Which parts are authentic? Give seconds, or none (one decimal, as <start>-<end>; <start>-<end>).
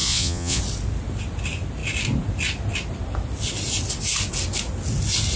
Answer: 0.6-5.4